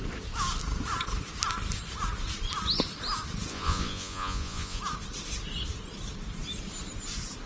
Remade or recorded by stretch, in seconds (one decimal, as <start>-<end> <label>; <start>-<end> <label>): 0.0-3.5 recorded; 3.5-4.8 remade; 4.8-7.5 recorded